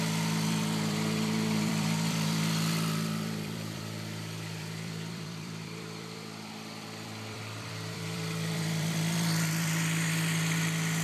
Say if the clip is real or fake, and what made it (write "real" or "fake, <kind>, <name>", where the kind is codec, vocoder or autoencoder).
fake, vocoder, BigVGAN v2